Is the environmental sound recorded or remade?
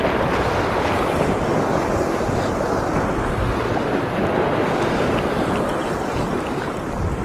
recorded